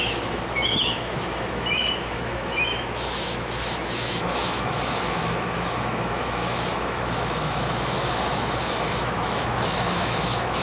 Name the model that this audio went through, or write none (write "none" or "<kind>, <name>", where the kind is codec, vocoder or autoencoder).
autoencoder, DAC-VAE